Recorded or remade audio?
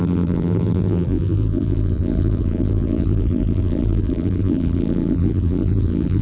remade